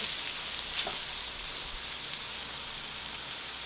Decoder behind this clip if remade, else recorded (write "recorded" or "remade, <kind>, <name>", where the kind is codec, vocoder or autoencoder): recorded